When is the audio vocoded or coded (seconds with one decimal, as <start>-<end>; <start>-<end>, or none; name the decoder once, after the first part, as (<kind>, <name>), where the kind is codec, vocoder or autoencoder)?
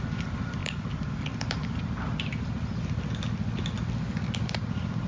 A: 0.6-1.1 (vocoder, BigVGAN v2)